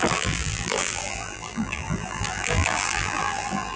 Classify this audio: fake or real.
fake